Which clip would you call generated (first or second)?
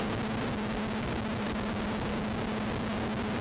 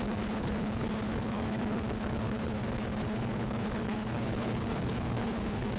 second